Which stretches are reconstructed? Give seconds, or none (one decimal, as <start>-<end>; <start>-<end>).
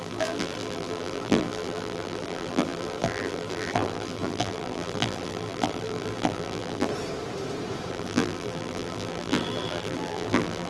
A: 0.0-6.9; 7.9-10.7